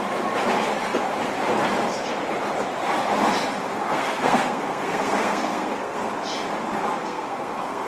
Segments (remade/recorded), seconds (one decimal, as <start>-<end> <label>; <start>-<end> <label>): 0.0-3.7 recorded; 3.7-6.1 remade; 6.1-7.0 recorded; 7.0-7.9 remade